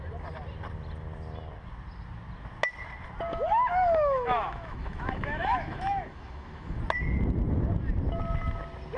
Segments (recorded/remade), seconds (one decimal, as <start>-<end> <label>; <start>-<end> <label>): 0.0-3.3 recorded; 3.3-6.8 remade; 6.8-9.0 recorded